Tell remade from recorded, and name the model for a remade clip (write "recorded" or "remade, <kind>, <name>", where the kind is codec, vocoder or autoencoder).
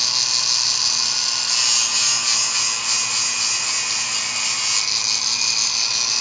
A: recorded